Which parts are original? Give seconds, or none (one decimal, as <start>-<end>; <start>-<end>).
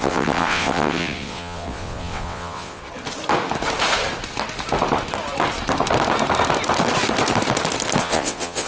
2.8-8.0